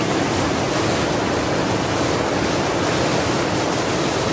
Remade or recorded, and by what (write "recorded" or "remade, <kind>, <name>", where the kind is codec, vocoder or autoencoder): recorded